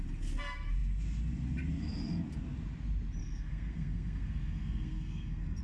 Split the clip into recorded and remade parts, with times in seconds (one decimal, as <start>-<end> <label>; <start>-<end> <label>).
0.0-3.2 recorded; 3.2-5.6 remade